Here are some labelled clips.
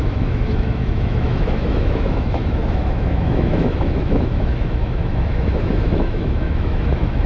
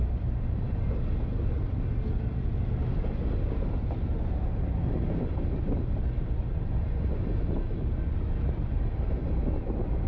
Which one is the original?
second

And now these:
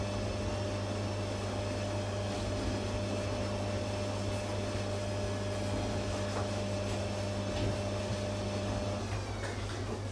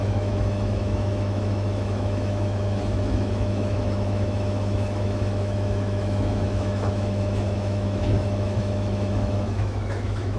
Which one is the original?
first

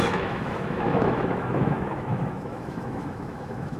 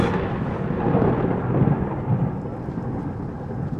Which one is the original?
second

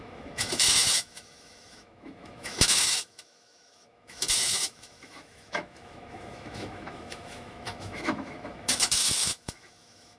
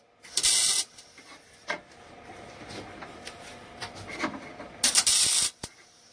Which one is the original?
second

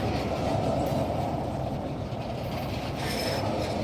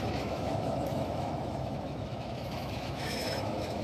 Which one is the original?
first